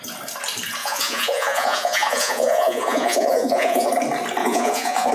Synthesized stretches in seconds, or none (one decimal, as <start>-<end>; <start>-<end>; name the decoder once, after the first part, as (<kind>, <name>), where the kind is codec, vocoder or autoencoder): 0.8-3.9 (vocoder, Vocos); 4.4-5.1